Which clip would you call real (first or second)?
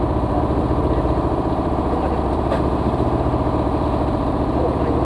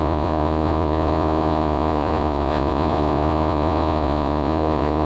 first